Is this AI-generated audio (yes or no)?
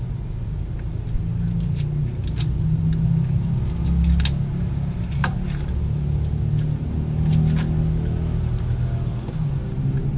no